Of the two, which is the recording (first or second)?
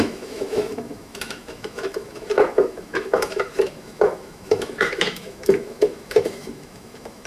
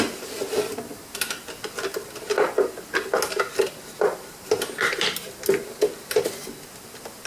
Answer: second